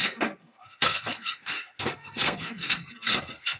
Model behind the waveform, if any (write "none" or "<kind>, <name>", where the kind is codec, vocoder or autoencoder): codec, SNAC